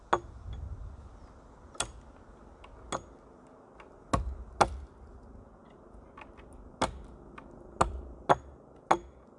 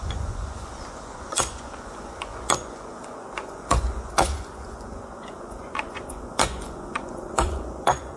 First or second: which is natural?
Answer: first